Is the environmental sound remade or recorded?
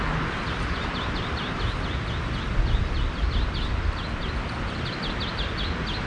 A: recorded